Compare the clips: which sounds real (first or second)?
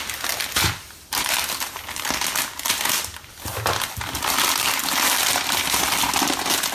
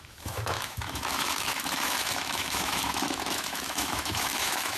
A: first